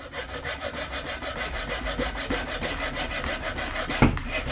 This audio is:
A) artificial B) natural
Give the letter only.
B